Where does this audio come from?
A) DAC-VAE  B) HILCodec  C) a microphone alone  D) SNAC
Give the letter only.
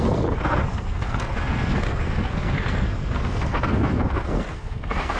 D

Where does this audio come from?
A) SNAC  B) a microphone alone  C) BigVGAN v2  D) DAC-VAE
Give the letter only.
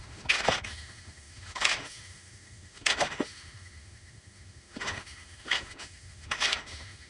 D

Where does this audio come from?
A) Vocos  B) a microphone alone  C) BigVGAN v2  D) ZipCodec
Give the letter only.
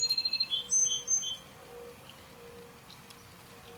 B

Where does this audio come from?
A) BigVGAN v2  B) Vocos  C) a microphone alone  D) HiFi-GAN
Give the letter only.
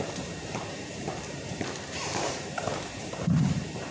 A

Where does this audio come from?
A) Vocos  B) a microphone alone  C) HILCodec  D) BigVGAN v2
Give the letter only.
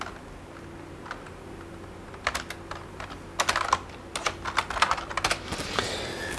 B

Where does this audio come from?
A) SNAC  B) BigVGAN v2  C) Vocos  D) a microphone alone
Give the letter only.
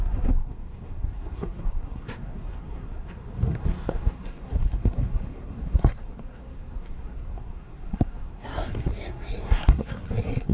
A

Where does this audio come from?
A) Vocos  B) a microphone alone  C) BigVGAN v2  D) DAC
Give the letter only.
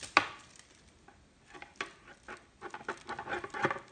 B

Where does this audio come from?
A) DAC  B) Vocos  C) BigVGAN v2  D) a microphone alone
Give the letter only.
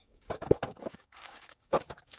A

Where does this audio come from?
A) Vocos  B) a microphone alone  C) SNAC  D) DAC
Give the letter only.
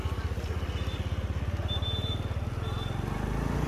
B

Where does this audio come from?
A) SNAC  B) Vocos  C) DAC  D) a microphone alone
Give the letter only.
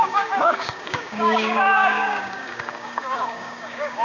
C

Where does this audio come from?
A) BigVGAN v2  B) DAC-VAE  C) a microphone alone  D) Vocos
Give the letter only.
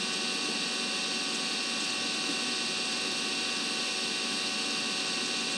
C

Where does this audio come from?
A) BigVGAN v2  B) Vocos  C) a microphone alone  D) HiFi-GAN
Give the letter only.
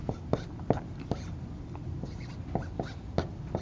C